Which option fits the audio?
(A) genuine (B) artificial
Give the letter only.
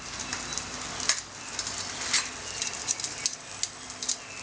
A